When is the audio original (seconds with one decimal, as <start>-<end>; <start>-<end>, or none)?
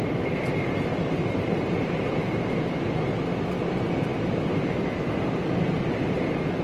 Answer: 0.0-0.9; 2.1-6.6